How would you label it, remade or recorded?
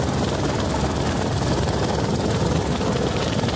recorded